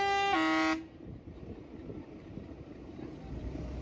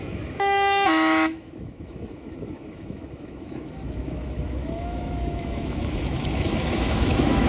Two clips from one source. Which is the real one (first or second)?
first